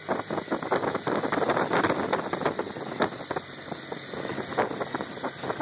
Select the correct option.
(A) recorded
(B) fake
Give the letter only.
A